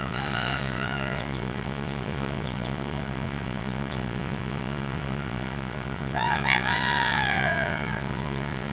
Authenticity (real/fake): fake